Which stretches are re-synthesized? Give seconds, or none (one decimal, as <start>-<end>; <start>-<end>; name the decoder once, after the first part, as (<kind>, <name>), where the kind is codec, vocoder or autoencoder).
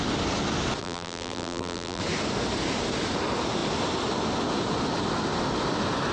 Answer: 0.8-2.0 (vocoder, BigVGAN v2)